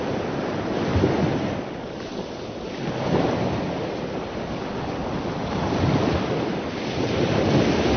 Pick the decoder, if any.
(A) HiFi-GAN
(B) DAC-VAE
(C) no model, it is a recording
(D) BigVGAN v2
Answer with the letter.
C